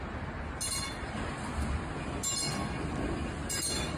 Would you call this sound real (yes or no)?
yes